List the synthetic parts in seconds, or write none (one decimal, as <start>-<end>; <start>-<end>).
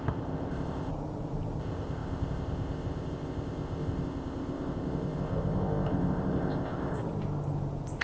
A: 0.0-0.9; 1.6-7.0